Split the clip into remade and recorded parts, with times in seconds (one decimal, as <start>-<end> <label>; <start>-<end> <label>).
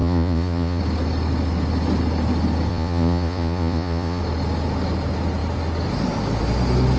0.0-0.8 remade; 0.8-2.7 recorded; 2.7-4.2 remade; 4.2-7.0 recorded